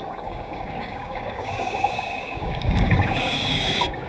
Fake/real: fake